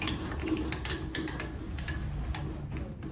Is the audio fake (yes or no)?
no